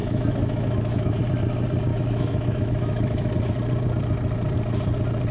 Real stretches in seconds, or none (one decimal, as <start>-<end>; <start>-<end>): 1.2-1.9; 3.3-5.3

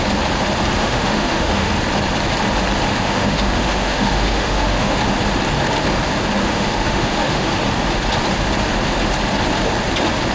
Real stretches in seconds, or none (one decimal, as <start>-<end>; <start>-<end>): 0.0-0.8; 1.7-2.9; 5.0-6.5; 7.5-10.3